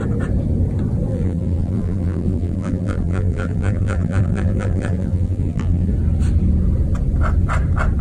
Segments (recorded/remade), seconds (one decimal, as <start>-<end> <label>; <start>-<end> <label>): 0.0-1.1 recorded; 1.1-5.9 remade; 5.9-8.0 recorded